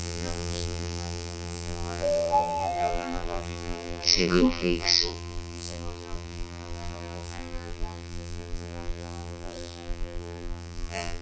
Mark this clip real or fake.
fake